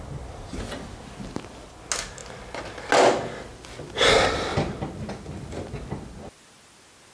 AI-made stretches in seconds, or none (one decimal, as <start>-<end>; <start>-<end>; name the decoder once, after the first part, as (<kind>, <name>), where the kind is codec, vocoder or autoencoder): none